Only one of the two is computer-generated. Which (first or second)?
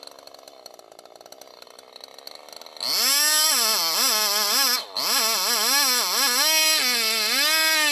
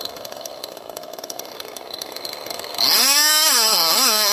second